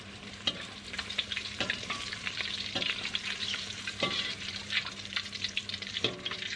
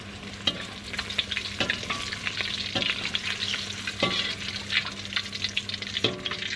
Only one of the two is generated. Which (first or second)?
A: first